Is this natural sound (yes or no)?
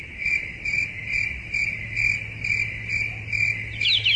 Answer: yes